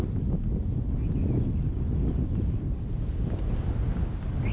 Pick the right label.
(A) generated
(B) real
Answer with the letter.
B